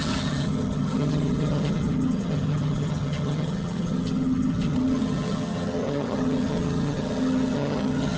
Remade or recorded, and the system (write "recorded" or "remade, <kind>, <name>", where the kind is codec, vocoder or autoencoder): remade, vocoder, HiFi-GAN